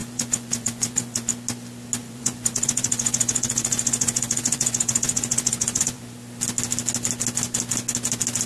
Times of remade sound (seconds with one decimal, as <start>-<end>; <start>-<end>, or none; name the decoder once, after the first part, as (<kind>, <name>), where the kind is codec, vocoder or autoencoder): 0.0-1.3 (vocoder, Vocos); 2.0-6.0